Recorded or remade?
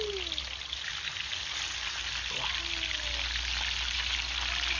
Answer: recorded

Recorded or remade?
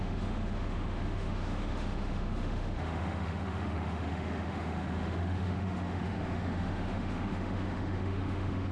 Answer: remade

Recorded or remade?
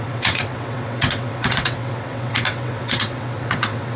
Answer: remade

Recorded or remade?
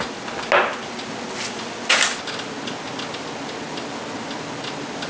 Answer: recorded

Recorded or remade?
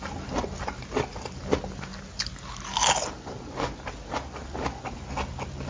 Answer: recorded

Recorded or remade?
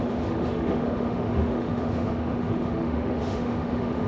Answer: remade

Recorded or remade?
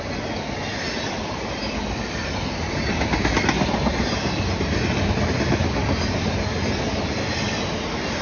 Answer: recorded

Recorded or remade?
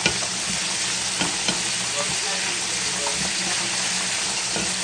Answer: recorded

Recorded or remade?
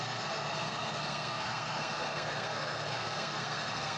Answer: remade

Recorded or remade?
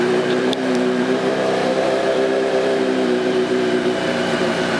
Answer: remade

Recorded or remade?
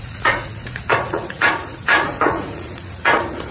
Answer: remade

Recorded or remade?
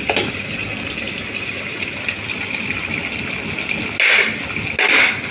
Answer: recorded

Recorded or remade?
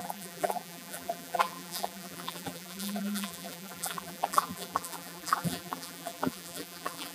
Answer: remade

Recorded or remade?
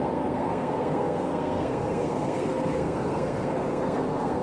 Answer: remade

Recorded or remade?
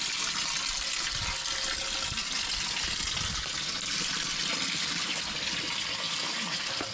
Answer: recorded